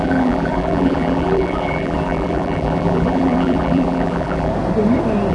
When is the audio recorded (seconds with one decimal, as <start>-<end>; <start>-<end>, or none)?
4.5-5.3